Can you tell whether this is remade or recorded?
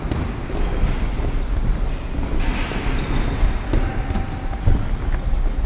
recorded